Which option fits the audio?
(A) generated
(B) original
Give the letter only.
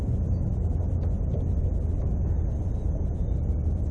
B